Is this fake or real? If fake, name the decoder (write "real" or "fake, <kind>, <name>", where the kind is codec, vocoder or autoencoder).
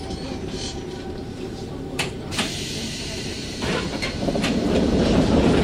fake, vocoder, BigVGAN v2